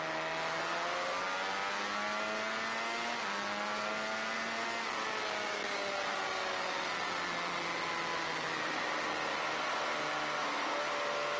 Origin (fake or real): real